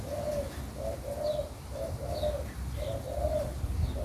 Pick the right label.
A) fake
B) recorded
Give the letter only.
B